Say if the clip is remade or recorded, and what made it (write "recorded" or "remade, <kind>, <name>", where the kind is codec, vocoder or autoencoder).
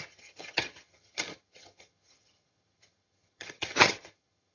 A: remade, vocoder, HiFi-GAN